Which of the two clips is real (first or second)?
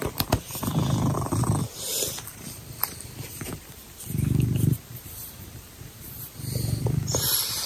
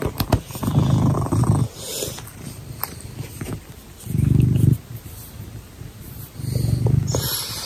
second